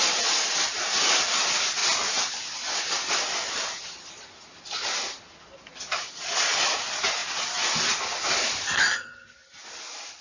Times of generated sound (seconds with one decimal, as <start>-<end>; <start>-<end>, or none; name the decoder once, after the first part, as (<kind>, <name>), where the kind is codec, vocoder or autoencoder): none